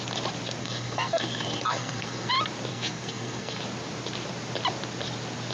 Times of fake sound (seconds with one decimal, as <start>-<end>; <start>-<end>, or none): 0.6-2.3; 2.7-3.6

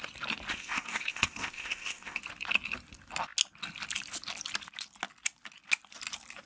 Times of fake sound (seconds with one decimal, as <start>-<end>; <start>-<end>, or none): 0.5-2.2

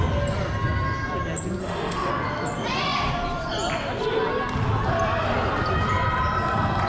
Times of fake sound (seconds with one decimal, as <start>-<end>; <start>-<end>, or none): 1.6-2.1

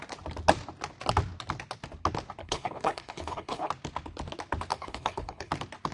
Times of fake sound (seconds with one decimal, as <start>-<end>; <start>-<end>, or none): 2.4-3.7; 4.7-5.5

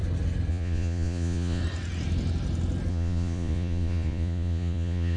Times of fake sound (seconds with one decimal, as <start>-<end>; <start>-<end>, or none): 0.5-1.6; 2.9-5.2

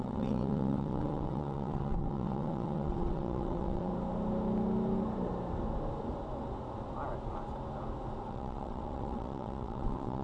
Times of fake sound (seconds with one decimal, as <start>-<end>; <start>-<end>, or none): 0.0-3.9; 8.3-10.2

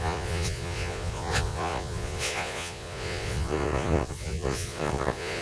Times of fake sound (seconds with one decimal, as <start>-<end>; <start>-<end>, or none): 0.0-5.4

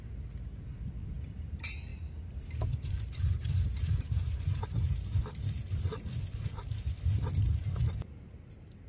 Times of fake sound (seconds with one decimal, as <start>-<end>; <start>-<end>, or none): 1.9-4.6